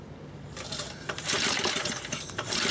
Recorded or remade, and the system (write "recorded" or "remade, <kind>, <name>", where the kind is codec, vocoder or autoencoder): recorded